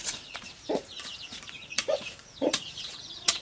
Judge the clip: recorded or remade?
remade